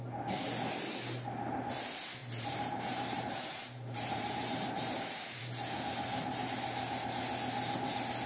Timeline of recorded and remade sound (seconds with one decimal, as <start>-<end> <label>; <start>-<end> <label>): 0.0-2.2 recorded; 2.2-5.4 remade; 5.4-8.3 recorded